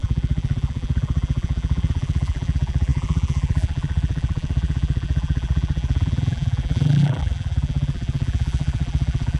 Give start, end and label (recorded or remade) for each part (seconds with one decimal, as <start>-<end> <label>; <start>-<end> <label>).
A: 0.0-9.4 remade